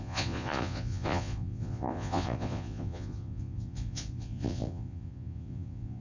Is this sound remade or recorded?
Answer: remade